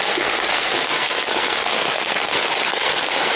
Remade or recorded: remade